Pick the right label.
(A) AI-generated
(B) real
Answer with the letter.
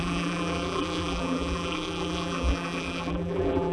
A